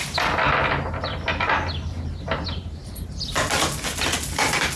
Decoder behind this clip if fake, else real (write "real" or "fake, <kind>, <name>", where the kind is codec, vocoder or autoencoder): real